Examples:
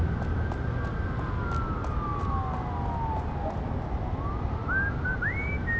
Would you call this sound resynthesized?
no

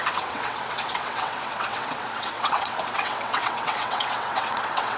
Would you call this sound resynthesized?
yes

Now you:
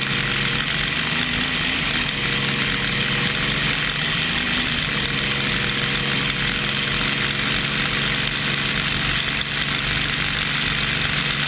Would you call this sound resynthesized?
no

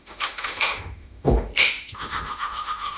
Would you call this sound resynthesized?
yes